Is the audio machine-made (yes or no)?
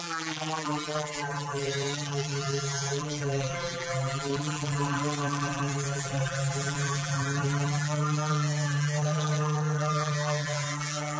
yes